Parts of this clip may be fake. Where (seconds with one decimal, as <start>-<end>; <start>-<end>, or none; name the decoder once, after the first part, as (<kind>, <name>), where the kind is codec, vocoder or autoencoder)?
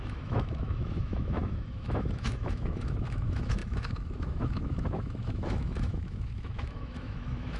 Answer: 0.0-7.6 (autoencoder, DAC-VAE)